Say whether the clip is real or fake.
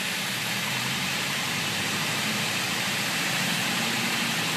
fake